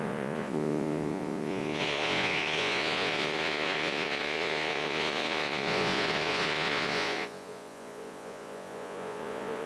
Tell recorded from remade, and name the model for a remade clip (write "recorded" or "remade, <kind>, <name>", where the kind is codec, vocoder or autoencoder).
remade, vocoder, Vocos